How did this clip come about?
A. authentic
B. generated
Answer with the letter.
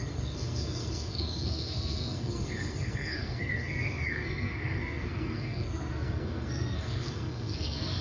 B